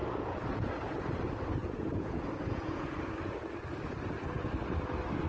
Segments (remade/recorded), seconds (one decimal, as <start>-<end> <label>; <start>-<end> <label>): 0.0-1.0 remade; 1.0-1.6 recorded; 1.6-3.4 remade; 3.4-5.3 recorded

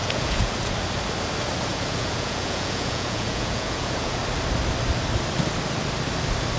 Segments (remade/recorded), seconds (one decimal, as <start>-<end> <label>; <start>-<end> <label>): 0.0-0.5 remade; 0.5-1.7 recorded; 1.7-4.2 remade; 4.2-6.6 recorded

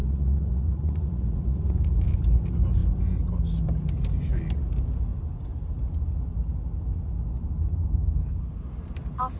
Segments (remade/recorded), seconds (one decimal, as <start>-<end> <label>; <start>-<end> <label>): 0.0-1.8 remade; 1.8-9.4 recorded

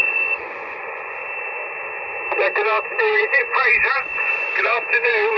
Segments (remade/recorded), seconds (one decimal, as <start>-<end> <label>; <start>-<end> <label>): 0.0-1.2 remade; 1.2-2.8 recorded; 2.8-5.4 remade

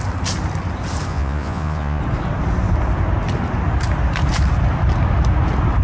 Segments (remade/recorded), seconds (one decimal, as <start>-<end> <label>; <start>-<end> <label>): 0.0-1.1 recorded; 1.1-2.0 remade; 2.0-5.8 recorded